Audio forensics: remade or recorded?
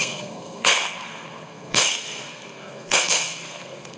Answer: remade